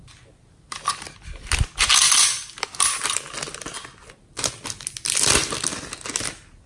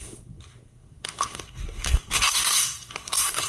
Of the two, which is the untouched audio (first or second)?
first